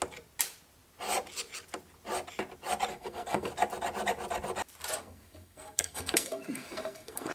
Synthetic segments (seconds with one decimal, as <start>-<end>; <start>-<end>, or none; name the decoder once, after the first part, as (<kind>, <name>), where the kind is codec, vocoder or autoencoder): 2.9-3.5 (codec, SNAC); 5.0-7.3